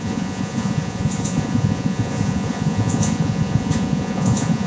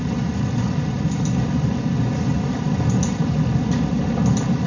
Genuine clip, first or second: second